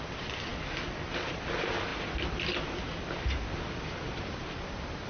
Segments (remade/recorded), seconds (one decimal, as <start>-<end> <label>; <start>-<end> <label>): 0.0-5.1 recorded

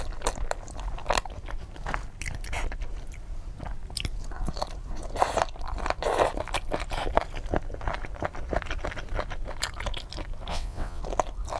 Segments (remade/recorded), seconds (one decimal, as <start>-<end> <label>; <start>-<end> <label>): 0.0-10.5 recorded; 10.5-11.0 remade; 11.0-11.6 recorded

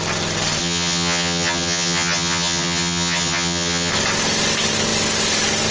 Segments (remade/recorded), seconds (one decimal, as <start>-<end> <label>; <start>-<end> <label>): 0.0-0.6 recorded; 0.6-3.9 remade; 3.9-5.7 recorded

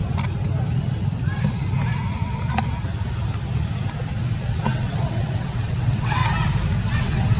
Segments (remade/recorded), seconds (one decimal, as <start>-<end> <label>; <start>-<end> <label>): 0.0-4.4 recorded; 4.4-6.2 remade; 6.2-6.9 recorded; 6.9-7.4 remade

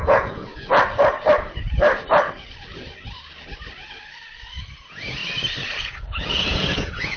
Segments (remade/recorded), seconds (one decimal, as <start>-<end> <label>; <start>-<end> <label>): 0.0-0.5 remade; 0.5-4.8 recorded; 4.8-5.2 remade; 5.2-5.8 recorded; 5.8-7.2 remade